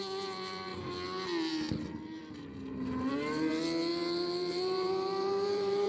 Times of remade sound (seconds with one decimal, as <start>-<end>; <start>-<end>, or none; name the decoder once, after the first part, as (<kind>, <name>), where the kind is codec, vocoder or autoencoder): 3.9-5.9 (vocoder, BigVGAN v2)